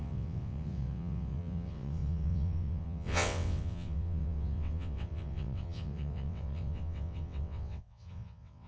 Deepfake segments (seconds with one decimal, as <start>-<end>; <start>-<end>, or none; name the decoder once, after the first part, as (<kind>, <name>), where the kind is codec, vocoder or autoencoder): 0.0-8.7 (vocoder, WaveNeXt)